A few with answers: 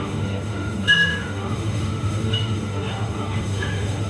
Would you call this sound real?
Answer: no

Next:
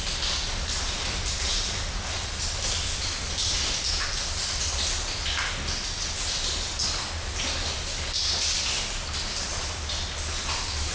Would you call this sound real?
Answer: yes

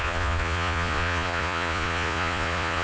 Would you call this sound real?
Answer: no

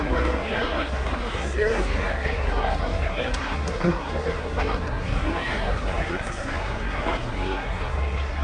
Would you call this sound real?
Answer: no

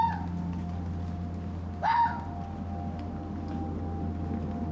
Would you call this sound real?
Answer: yes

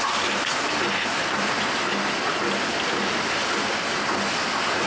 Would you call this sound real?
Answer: yes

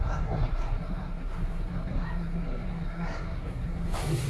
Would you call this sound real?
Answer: no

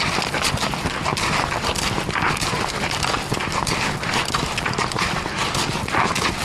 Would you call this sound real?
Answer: yes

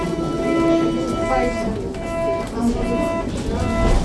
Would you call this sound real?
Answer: yes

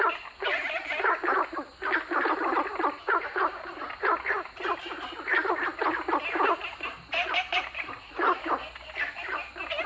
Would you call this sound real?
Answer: yes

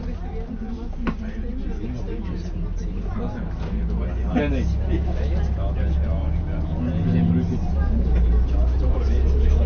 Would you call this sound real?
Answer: yes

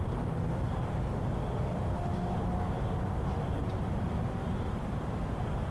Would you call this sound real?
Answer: yes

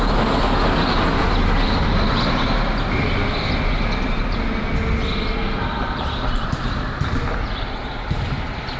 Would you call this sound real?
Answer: yes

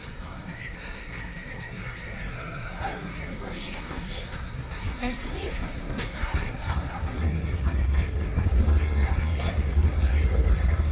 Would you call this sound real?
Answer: no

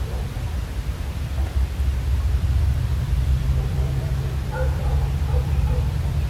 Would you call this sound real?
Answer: no